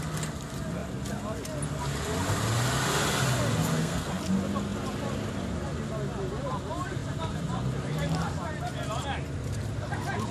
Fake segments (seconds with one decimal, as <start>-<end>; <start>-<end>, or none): 3.7-4.2